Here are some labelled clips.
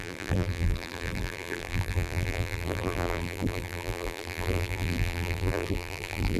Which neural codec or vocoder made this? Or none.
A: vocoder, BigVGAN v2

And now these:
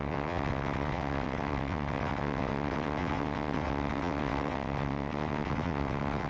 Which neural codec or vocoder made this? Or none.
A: vocoder, WaveNeXt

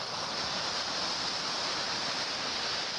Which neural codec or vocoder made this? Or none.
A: vocoder, BigVGAN v2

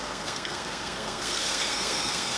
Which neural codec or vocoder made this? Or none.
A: codec, SNAC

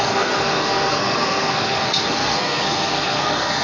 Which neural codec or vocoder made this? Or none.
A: codec, SNAC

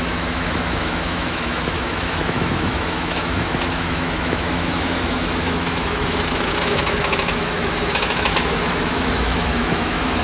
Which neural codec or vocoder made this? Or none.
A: autoencoder, DAC-VAE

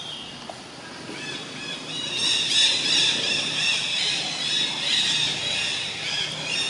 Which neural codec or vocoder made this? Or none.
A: none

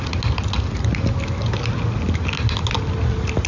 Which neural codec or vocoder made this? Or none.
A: none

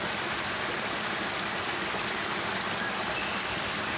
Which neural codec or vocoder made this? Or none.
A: none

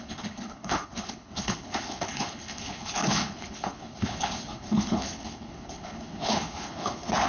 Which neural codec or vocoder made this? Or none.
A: codec, HILCodec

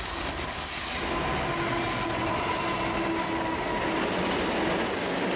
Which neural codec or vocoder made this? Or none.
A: none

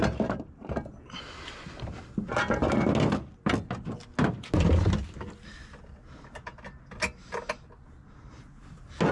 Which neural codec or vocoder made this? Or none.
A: none